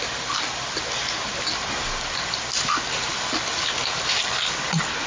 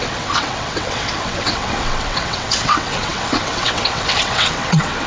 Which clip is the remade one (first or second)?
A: second